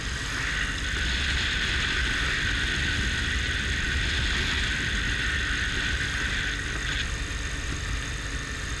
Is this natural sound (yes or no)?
yes